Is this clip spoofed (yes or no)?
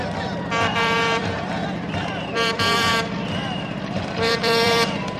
yes